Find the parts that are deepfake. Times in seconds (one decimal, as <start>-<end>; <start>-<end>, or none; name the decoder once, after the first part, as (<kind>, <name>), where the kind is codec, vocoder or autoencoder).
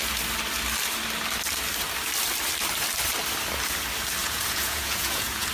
4.2-5.5 (vocoder, Vocos)